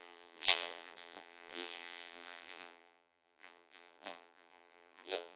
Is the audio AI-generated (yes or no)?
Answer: yes